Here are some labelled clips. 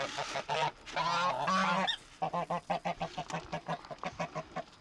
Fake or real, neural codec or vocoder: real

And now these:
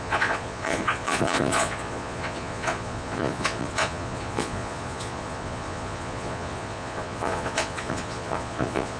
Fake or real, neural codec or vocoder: fake, vocoder, Vocos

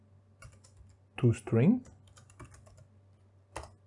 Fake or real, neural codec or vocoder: real